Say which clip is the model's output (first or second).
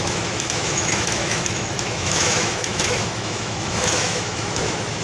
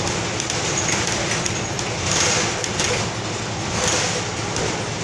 first